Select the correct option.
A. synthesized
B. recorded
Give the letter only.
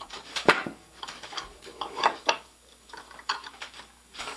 A